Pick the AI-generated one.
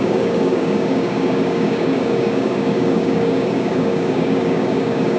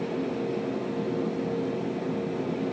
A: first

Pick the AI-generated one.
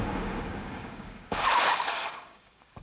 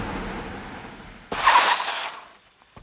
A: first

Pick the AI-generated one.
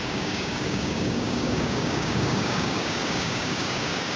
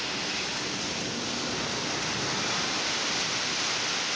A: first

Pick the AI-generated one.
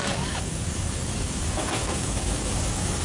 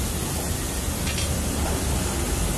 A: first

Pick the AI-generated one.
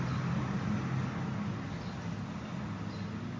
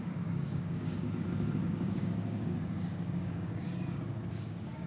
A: second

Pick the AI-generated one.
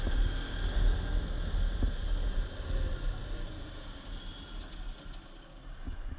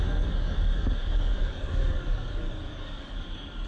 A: second